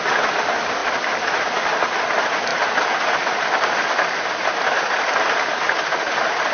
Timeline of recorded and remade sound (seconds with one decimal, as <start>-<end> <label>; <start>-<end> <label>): 0.0-6.5 recorded